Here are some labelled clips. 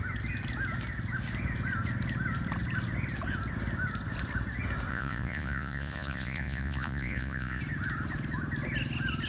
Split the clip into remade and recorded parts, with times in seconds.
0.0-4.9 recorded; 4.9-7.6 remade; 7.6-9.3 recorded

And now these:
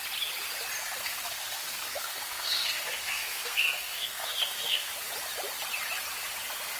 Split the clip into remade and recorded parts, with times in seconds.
0.0-0.8 recorded; 0.8-4.9 remade; 4.9-6.8 recorded